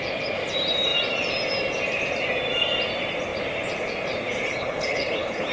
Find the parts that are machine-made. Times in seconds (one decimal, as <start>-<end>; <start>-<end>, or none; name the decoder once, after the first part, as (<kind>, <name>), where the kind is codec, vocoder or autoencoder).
4.5-5.5 (codec, HILCodec)